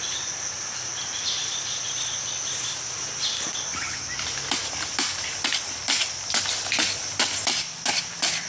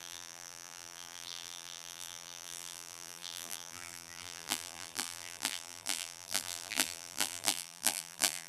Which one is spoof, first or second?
second